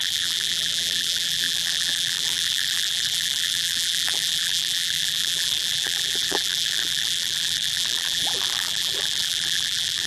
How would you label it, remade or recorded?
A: remade